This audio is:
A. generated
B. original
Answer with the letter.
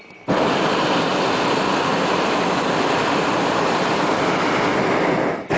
B